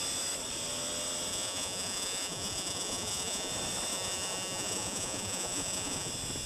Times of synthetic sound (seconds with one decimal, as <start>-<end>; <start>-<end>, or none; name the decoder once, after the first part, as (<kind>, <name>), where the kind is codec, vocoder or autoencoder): 1.3-3.5 (vocoder, Vocos); 3.9-6.1